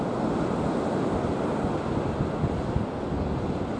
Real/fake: real